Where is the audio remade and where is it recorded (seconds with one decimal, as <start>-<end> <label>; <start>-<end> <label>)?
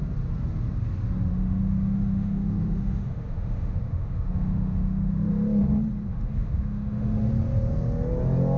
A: 0.0-1.3 recorded; 1.3-5.3 remade; 5.3-6.1 recorded; 6.1-7.3 remade; 7.3-8.6 recorded